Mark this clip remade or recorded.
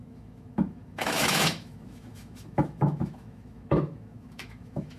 remade